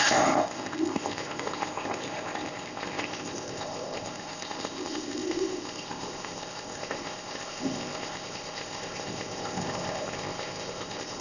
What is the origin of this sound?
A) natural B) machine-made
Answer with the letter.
B